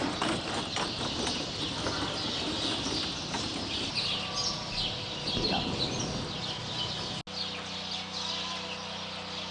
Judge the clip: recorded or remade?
recorded